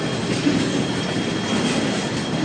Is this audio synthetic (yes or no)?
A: no